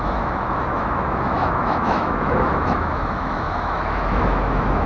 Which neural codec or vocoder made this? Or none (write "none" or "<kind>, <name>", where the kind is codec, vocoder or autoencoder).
autoencoder, DAC-VAE